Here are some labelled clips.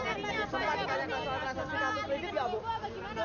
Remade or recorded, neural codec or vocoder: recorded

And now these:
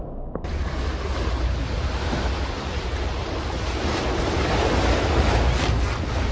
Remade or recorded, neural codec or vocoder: recorded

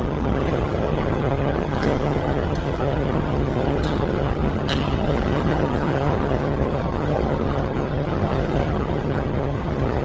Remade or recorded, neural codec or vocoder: remade, vocoder, HiFi-GAN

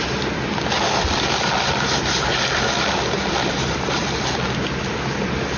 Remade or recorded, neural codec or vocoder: recorded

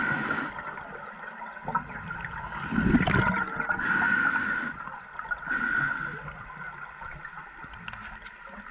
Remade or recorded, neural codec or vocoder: recorded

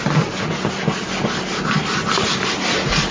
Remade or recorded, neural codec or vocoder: recorded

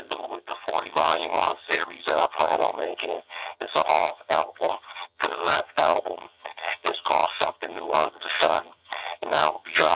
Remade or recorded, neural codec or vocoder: remade, vocoder, HiFi-GAN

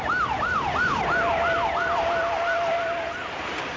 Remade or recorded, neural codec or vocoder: recorded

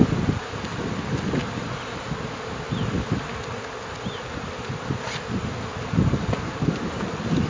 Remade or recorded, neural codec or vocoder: recorded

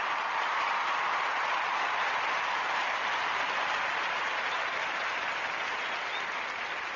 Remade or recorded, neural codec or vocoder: recorded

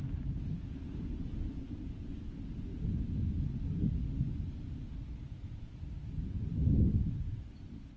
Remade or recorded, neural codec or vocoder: recorded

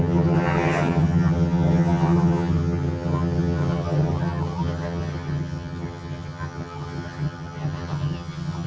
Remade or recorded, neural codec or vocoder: remade, vocoder, HiFi-GAN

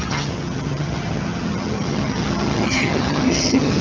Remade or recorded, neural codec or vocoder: remade, vocoder, HiFi-GAN